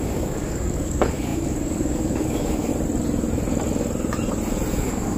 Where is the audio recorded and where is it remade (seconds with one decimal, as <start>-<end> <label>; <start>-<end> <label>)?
0.0-2.7 remade; 2.7-4.7 recorded; 4.7-5.2 remade